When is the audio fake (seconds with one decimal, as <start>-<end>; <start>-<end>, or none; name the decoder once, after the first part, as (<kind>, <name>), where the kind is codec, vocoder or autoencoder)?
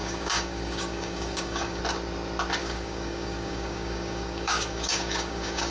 0.0-1.8 (codec, DAC); 2.6-5.7